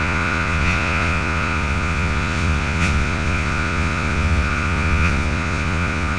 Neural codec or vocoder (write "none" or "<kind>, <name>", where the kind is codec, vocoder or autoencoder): vocoder, Vocos